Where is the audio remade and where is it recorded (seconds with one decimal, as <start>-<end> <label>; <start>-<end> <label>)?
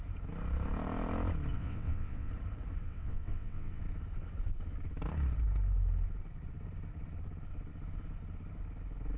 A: 0.0-1.5 recorded; 1.5-2.3 remade; 2.3-2.8 recorded; 2.8-3.8 remade; 3.8-9.2 recorded